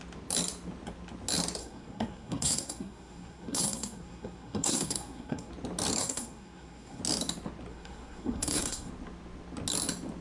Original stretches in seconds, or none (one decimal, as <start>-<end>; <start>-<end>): 0.0-1.6; 5.5-6.0; 7.0-7.7; 8.9-10.2

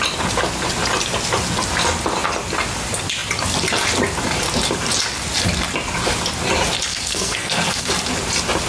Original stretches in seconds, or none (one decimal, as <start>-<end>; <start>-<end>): 0.0-6.9; 7.9-8.7

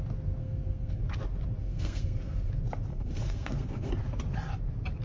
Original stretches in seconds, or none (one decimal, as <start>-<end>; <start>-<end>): 0.0-0.4; 1.0-1.6; 2.5-2.9; 3.9-5.0

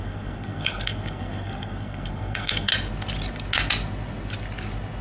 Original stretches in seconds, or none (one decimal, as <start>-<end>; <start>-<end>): 2.7-5.0

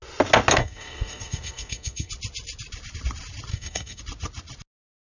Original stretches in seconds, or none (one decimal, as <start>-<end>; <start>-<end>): 0.0-0.6; 2.1-3.5; 4.0-5.0

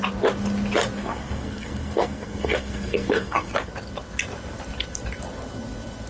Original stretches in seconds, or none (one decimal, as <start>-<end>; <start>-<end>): 0.0-1.0; 3.7-6.1